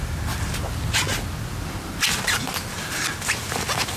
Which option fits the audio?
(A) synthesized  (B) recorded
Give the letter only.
B